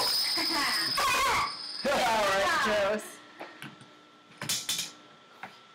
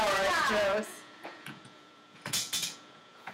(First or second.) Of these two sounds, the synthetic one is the second